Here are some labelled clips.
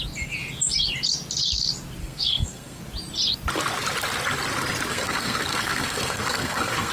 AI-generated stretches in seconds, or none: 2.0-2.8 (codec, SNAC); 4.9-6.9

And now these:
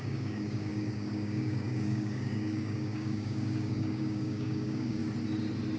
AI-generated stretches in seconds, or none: 0.0-5.0 (codec, DAC)

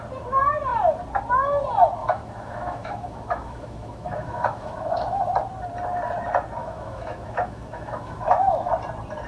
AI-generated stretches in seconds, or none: 2.0-5.2 (autoencoder, DAC-VAE); 6.6-8.7